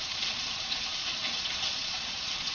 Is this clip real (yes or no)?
no